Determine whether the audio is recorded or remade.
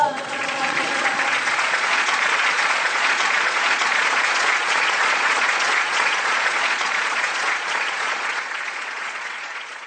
remade